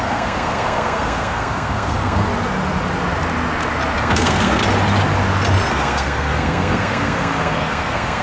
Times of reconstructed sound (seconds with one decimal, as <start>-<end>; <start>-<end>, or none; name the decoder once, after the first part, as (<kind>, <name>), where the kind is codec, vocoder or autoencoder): 0.0-2.3 (codec, SNAC); 4.0-4.6; 5.7-8.2